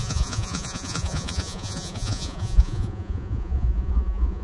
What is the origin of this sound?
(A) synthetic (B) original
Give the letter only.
A